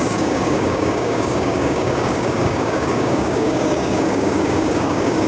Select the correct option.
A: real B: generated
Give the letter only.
B